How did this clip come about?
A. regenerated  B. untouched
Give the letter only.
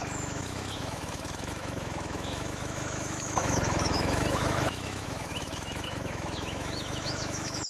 A